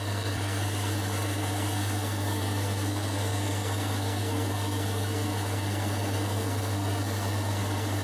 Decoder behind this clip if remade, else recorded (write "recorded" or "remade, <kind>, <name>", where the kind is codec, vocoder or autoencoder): remade, codec, SNAC